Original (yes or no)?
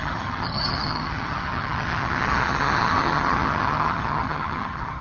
no